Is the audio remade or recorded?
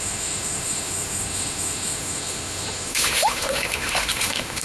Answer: remade